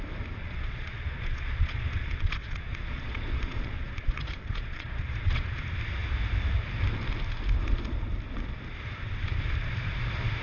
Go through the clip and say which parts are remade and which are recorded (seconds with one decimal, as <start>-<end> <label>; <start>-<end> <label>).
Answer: 0.0-0.4 recorded; 0.4-5.6 remade; 5.6-10.4 recorded